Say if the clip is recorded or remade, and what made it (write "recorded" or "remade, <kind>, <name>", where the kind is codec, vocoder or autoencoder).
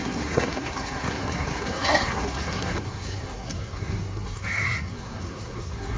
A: remade, codec, SNAC